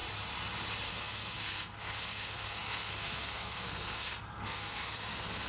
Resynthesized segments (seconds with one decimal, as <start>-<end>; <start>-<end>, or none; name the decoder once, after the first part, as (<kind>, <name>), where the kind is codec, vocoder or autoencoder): 0.9-5.5 (codec, SNAC)

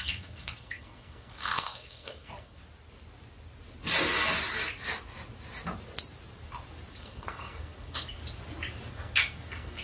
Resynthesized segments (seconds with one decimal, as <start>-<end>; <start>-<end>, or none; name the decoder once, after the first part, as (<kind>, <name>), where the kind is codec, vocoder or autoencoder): 0.0-2.6 (codec, SNAC); 6.9-8.2; 8.9-9.8

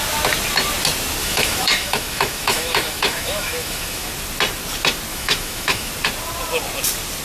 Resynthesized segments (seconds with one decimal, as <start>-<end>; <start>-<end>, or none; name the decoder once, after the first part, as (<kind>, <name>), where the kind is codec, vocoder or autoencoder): 1.2-4.1 (autoencoder, DAC-VAE); 5.1-5.9

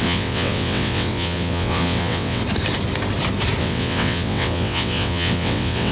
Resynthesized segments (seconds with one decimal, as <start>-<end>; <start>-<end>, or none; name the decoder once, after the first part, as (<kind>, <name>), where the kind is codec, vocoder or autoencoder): 0.0-2.4 (vocoder, WaveNeXt); 3.6-5.9

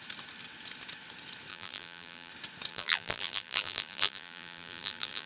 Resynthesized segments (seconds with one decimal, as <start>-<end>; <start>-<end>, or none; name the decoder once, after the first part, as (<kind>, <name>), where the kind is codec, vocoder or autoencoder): 1.5-2.3 (vocoder, BigVGAN v2); 2.7-5.3

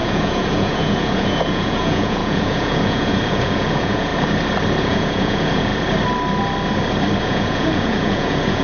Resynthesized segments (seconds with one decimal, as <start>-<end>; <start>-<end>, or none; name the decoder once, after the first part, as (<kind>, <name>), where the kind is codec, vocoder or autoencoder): 0.0-4.1 (vocoder, Vocos); 4.8-5.7; 7.2-8.6